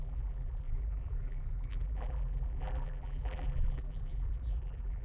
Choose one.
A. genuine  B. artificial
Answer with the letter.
B